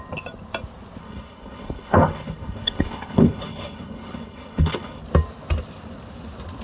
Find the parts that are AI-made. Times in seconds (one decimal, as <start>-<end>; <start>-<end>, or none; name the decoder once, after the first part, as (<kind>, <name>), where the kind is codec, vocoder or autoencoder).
1.0-5.0 (codec, HILCodec)